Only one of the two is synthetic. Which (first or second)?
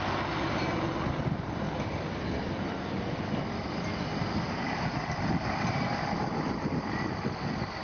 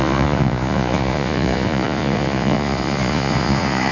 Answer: second